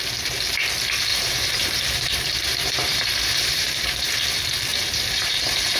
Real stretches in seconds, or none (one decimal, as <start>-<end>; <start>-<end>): 0.0-1.1; 4.1-4.7